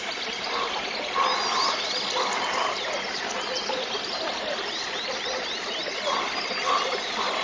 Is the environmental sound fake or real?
real